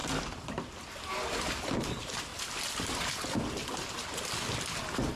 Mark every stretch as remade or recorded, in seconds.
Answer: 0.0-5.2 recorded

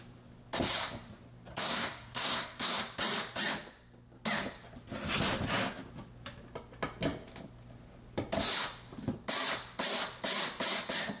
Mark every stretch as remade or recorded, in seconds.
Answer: 0.0-1.5 recorded; 1.5-2.8 remade; 2.8-11.2 recorded

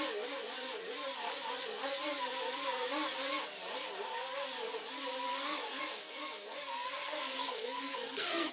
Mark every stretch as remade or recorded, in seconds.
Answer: 0.0-5.3 recorded; 5.3-8.5 remade

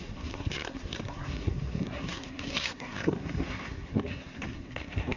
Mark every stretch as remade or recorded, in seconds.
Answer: 0.0-5.2 remade

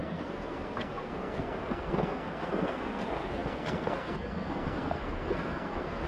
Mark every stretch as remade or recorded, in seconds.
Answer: 0.0-6.1 remade

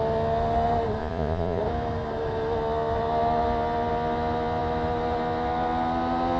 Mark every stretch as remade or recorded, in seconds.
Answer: 0.0-1.0 recorded; 1.0-1.6 remade; 1.6-6.4 recorded